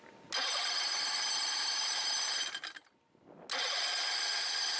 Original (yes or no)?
yes